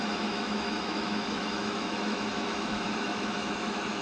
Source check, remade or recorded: remade